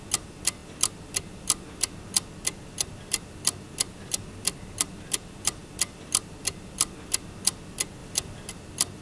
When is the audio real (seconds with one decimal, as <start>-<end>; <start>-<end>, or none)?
0.0-9.0